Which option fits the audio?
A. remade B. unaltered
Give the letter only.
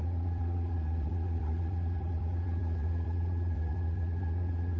A